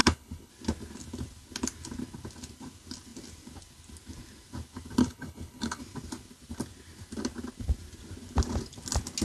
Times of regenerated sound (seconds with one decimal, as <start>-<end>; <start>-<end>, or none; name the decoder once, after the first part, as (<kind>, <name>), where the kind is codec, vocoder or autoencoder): 0.0-0.5 (codec, HILCodec); 5.0-5.8